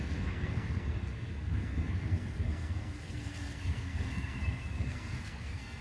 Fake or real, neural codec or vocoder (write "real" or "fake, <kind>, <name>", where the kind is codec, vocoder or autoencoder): fake, codec, SNAC